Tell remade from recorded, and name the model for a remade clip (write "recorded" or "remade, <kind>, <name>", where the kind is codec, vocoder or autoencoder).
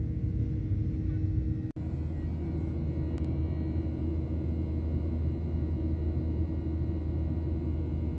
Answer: recorded